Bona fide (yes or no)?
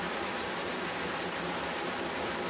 yes